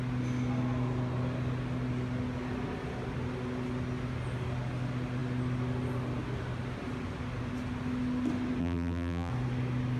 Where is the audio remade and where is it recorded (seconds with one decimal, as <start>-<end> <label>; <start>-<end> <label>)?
0.0-8.6 recorded; 8.6-9.3 remade; 9.3-10.0 recorded